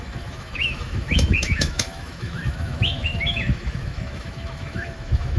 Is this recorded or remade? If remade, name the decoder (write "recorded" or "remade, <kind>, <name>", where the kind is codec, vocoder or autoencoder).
remade, autoencoder, DAC-VAE